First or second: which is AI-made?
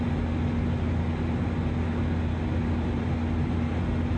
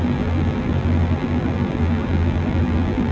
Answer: second